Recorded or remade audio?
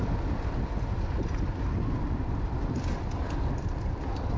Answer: recorded